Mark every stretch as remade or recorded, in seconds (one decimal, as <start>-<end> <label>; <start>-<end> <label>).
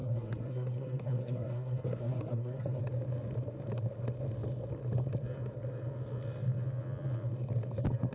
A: 0.0-2.8 remade; 2.8-8.1 recorded